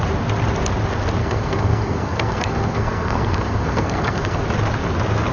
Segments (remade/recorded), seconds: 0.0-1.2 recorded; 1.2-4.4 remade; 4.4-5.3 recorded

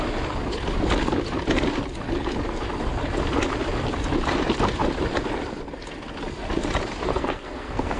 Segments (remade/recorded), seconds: 0.0-7.1 recorded; 7.1-8.0 remade

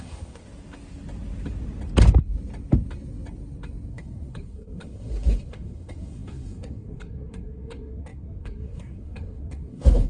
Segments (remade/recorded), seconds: 0.0-0.4 remade; 0.4-3.9 recorded; 3.9-10.1 remade

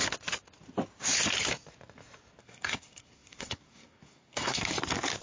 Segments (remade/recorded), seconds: 0.0-2.4 recorded; 2.4-4.6 remade; 4.6-5.2 recorded

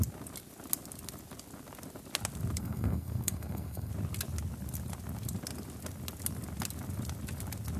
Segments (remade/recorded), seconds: 0.0-2.6 recorded; 2.6-3.9 remade; 3.9-7.8 recorded